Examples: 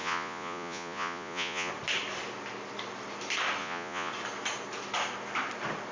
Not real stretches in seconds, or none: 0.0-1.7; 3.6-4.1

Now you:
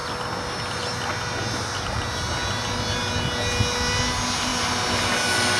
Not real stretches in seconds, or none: none

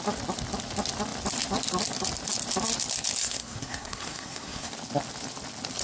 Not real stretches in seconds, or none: 3.2-4.7